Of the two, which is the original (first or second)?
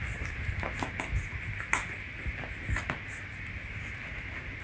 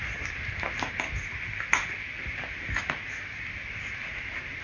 first